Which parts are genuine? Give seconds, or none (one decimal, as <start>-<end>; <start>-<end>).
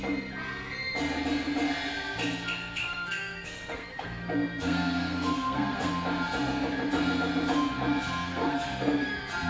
0.0-2.8; 5.9-8.3; 9.1-9.5